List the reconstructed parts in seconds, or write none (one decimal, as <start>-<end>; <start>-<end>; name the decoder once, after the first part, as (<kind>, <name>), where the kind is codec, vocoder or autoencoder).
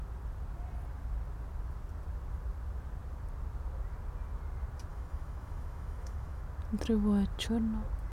4.9-6.4 (autoencoder, DAC-VAE)